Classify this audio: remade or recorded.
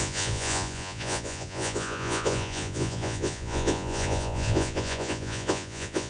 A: remade